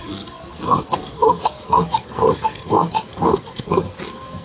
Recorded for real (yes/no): no